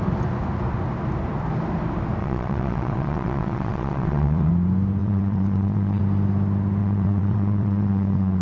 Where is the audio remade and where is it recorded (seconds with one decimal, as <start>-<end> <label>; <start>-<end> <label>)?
0.0-2.2 recorded; 2.2-4.5 remade; 4.5-5.0 recorded; 5.0-6.0 remade; 6.0-6.8 recorded; 6.8-8.4 remade